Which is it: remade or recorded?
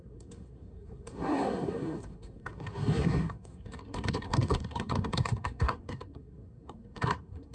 remade